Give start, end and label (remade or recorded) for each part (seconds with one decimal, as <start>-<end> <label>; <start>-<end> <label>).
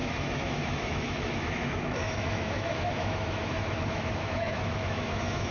0.0-5.5 remade